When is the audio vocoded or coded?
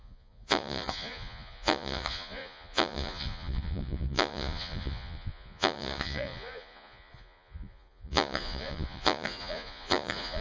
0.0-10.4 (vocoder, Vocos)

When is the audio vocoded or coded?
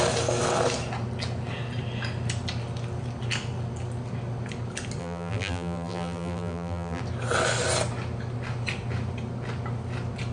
5.0-7.0 (vocoder, BigVGAN v2)